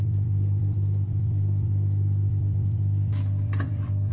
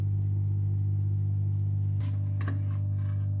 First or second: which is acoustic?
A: second